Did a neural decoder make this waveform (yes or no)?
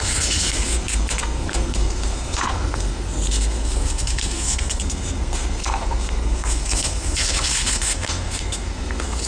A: yes